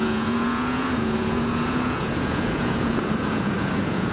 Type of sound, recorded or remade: remade